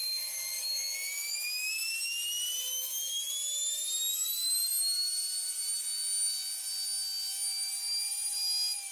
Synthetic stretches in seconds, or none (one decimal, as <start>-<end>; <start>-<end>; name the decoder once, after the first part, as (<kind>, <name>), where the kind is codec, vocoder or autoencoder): 0.0-1.7 (autoencoder, DAC-VAE); 2.7-3.3